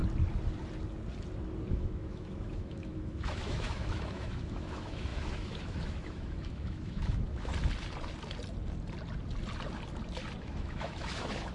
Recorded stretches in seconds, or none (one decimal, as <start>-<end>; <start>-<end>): 0.0-1.7; 7.5-10.4

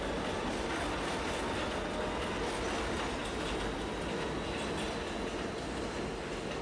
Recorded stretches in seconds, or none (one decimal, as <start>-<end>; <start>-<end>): 0.0-6.6

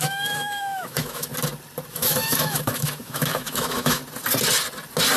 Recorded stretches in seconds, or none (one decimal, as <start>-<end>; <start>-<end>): 1.3-1.9; 4.0-5.2

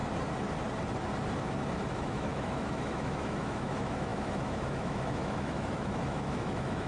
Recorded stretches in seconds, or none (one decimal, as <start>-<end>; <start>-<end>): 0.0-1.9

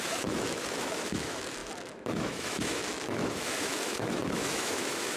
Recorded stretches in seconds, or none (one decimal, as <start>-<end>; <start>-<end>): none

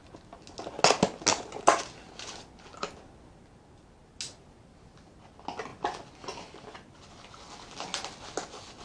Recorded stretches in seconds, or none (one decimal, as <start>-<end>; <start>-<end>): 0.0-8.8

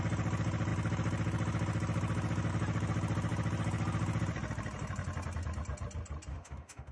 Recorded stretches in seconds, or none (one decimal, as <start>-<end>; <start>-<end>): 0.0-6.3